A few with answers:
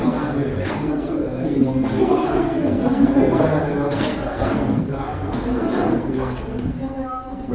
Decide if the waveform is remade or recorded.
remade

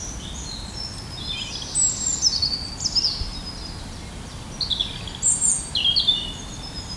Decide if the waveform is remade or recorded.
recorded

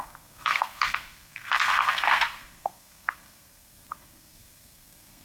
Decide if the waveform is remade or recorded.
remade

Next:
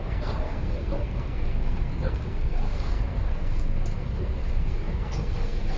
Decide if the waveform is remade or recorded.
remade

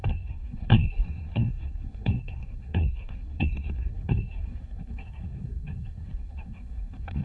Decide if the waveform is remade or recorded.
remade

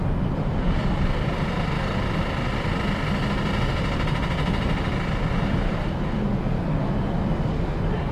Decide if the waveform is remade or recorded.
recorded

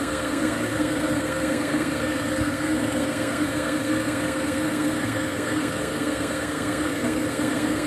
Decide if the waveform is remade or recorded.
remade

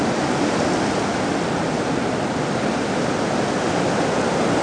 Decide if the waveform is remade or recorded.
recorded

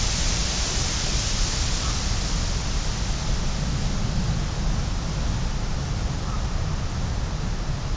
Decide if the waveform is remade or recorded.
recorded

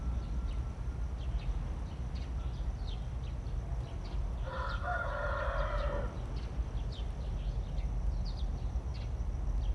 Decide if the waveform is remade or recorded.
recorded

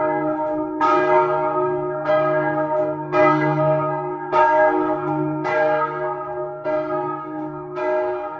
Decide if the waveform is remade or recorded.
remade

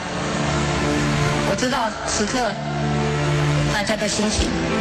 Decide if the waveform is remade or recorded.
remade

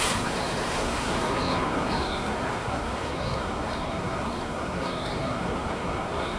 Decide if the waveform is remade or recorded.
remade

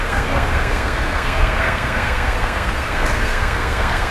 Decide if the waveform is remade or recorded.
remade